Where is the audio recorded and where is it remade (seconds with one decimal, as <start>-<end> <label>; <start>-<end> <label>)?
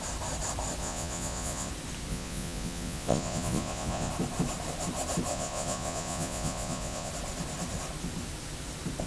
0.0-0.8 recorded; 0.8-1.7 remade; 1.7-2.1 recorded; 2.1-4.1 remade; 4.1-5.3 recorded; 5.3-7.1 remade; 7.1-9.1 recorded